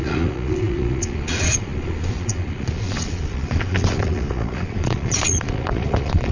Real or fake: fake